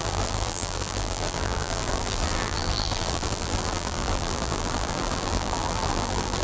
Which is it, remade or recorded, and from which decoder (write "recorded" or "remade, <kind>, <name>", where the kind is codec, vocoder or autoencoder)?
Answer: remade, vocoder, BigVGAN v2